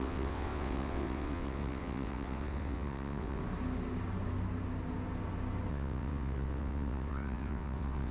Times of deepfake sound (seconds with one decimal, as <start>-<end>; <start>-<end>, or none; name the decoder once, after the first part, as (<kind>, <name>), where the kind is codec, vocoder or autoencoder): 0.0-3.4 (vocoder, WaveNeXt); 5.7-8.1